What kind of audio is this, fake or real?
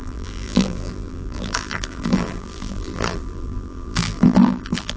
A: fake